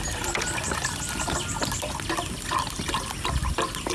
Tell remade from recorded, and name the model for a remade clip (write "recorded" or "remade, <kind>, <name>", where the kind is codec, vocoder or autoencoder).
recorded